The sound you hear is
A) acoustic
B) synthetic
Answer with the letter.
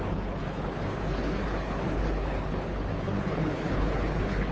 B